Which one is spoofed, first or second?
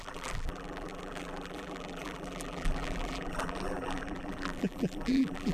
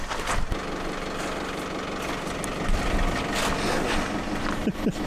first